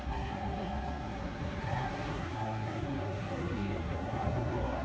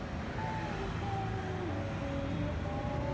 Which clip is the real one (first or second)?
second